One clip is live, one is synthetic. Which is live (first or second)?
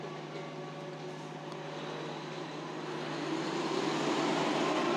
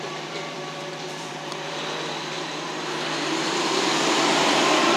first